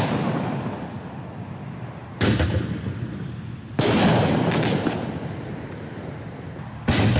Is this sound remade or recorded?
recorded